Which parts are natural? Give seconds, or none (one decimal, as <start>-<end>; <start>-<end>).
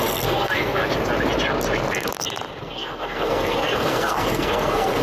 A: 0.8-2.6